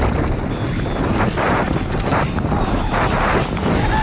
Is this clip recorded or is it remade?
recorded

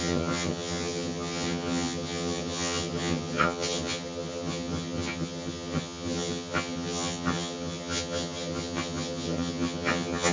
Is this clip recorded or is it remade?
remade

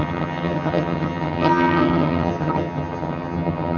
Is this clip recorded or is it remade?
remade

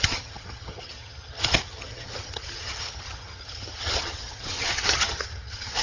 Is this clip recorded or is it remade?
remade